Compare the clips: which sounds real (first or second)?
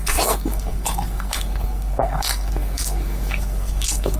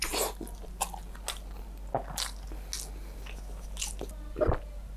second